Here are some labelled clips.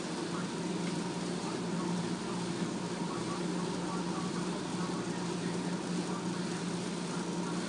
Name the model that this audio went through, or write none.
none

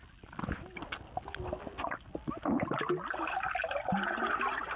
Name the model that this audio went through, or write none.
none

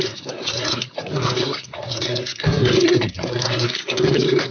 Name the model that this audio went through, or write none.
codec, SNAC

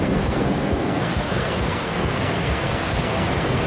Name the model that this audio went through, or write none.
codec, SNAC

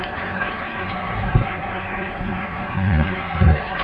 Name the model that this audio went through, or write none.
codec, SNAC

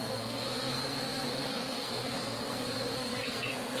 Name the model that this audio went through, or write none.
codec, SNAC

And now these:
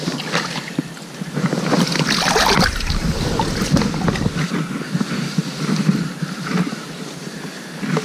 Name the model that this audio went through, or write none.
none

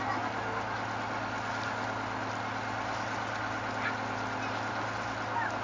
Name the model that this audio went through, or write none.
none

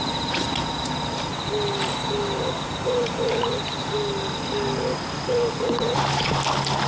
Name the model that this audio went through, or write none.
none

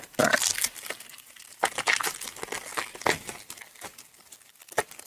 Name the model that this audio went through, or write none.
none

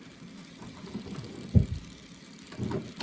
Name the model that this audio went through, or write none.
none